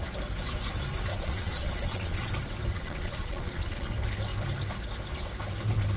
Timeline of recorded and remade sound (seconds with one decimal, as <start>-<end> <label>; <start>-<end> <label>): 0.0-1.1 recorded; 1.1-2.3 remade; 2.3-2.7 recorded; 2.7-3.9 remade; 3.9-6.0 recorded